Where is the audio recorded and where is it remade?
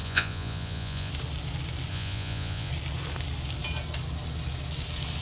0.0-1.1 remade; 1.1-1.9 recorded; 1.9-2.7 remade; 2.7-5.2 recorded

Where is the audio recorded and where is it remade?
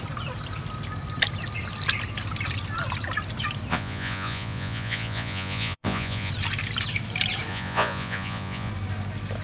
0.0-3.7 recorded; 3.7-6.3 remade; 6.3-7.5 recorded; 7.5-8.7 remade; 8.7-9.4 recorded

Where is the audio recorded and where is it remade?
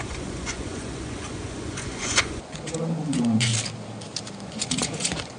0.0-3.5 remade; 3.5-4.4 recorded; 4.4-5.4 remade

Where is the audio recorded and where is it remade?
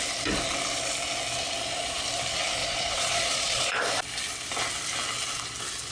0.0-2.6 recorded; 2.6-3.8 remade; 3.8-5.9 recorded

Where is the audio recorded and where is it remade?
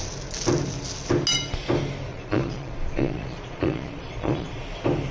0.0-2.1 recorded; 2.1-4.6 remade; 4.6-5.1 recorded